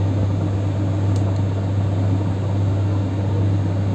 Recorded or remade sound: recorded